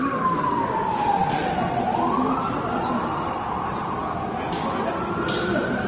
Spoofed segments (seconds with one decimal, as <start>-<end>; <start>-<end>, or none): none